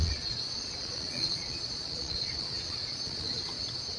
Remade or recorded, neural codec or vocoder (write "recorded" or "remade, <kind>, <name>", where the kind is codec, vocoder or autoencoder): remade, vocoder, Vocos